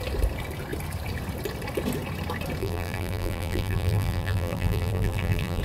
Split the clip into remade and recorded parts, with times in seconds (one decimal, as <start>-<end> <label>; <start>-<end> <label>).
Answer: 0.0-2.6 recorded; 2.6-5.6 remade